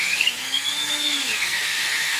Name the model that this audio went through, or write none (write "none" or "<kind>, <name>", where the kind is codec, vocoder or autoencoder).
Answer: codec, SNAC